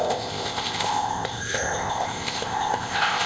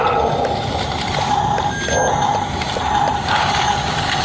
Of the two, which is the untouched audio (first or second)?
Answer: second